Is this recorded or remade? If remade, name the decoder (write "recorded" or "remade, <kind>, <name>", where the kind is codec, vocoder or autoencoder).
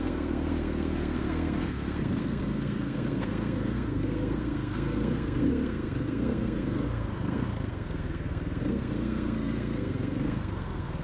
remade, codec, SNAC